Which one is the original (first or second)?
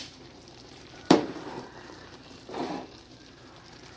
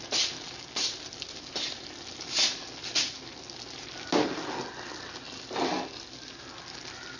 second